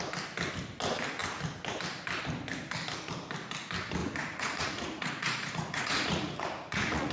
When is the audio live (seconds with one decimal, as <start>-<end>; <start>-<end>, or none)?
0.0-4.0